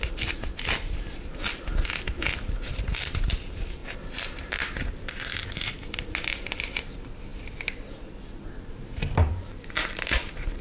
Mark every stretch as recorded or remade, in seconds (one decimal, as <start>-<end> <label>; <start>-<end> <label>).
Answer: 0.0-10.6 recorded